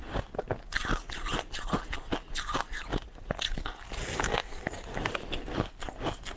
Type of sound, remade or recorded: recorded